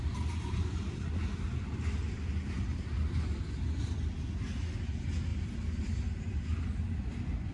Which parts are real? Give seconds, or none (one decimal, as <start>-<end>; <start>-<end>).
0.0-5.3; 6.4-7.5